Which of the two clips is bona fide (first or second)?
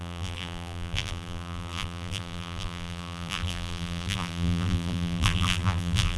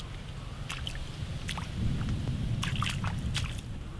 second